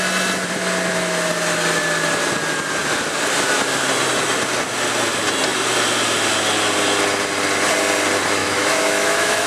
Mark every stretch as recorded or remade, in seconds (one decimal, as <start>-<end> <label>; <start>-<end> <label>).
0.0-8.4 recorded; 8.4-9.5 remade